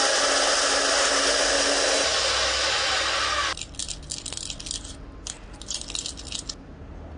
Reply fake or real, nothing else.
real